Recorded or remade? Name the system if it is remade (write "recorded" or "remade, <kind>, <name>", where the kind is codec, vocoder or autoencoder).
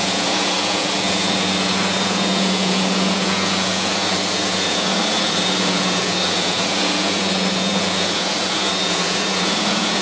remade, vocoder, Vocos